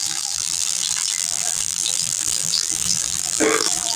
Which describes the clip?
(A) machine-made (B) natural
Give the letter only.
A